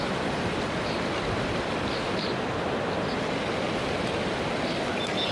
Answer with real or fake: real